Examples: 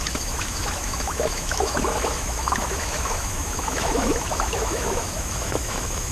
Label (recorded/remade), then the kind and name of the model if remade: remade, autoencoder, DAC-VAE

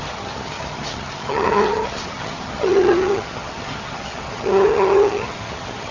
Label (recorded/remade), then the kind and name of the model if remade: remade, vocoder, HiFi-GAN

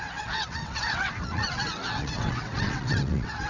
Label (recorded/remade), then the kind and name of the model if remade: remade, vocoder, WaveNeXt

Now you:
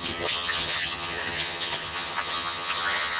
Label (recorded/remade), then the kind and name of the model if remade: remade, vocoder, HiFi-GAN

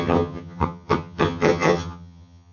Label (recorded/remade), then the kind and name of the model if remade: remade, vocoder, HiFi-GAN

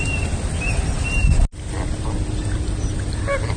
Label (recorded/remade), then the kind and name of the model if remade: recorded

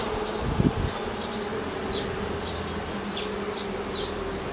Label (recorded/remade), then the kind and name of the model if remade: recorded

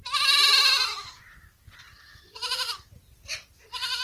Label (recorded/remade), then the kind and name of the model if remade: recorded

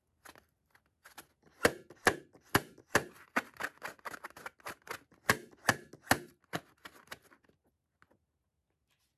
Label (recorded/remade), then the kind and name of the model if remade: recorded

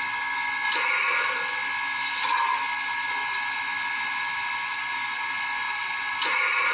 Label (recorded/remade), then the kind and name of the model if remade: recorded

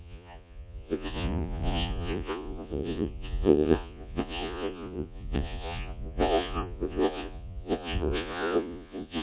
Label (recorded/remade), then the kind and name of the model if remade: remade, vocoder, Vocos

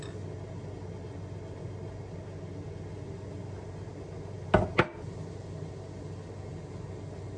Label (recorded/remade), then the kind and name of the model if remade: recorded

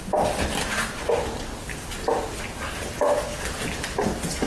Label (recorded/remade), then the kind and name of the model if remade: recorded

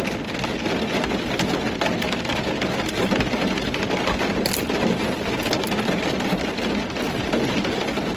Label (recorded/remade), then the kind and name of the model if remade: recorded